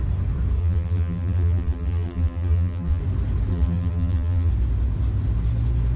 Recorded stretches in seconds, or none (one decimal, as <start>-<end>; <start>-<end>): 0.0-0.6; 3.0-3.5; 4.5-6.0